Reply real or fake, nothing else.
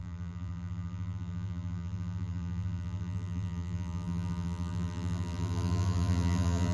fake